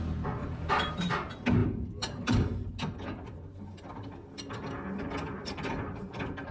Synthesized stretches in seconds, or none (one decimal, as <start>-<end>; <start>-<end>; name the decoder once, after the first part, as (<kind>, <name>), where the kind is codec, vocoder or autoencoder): 0.4-1.1 (vocoder, BigVGAN v2); 1.6-2.7; 5.4-6.1